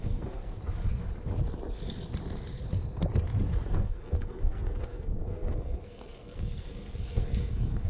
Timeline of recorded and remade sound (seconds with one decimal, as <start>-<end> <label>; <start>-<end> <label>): 0.0-0.5 remade; 0.5-3.7 recorded; 3.7-7.9 remade